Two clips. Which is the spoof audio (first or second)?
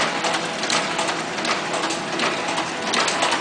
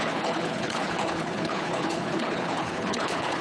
second